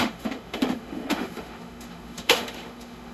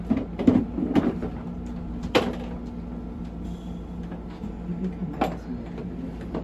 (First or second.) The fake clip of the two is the first